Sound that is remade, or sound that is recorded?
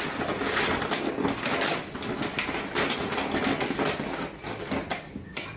recorded